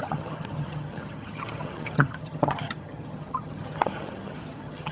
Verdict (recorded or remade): remade